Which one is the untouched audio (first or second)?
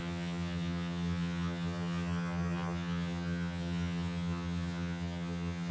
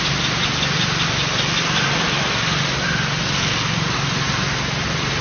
second